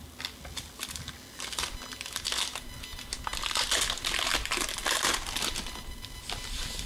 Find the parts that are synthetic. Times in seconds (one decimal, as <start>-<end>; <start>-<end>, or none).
none